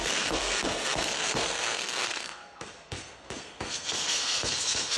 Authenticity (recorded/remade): remade